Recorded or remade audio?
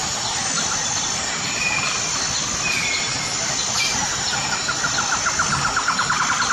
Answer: recorded